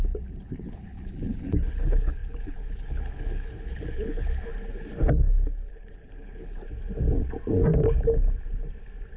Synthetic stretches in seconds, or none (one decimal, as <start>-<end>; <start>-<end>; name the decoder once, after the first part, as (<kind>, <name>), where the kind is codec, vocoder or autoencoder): 0.0-4.5 (codec, HILCodec); 5.7-6.6